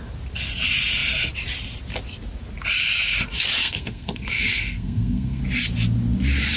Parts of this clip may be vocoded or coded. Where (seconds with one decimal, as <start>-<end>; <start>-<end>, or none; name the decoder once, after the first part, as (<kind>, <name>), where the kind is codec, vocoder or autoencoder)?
3.6-5.4 (codec, SNAC)